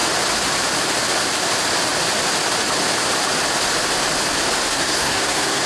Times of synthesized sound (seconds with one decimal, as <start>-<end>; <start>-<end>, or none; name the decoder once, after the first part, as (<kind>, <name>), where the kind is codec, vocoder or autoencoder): 4.7-5.7 (codec, SNAC)